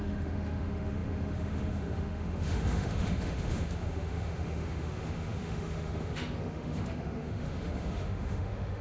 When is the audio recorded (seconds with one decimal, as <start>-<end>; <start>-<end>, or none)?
none